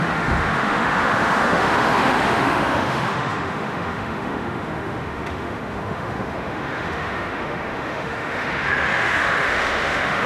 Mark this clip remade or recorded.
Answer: remade